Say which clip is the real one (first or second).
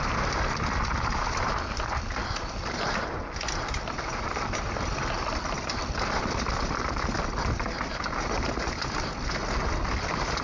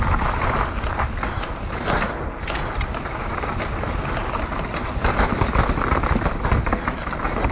second